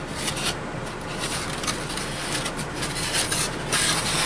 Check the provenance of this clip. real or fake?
real